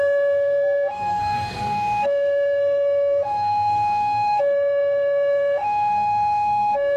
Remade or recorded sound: remade